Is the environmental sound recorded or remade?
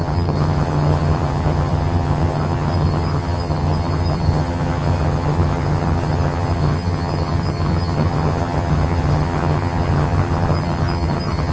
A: remade